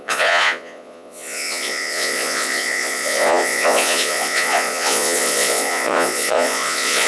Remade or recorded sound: remade